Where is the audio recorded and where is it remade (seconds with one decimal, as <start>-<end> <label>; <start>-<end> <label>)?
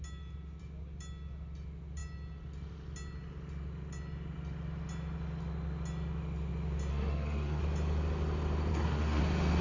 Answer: 0.0-6.9 recorded; 6.9-7.6 remade; 7.6-8.7 recorded; 8.7-9.2 remade; 9.2-9.6 recorded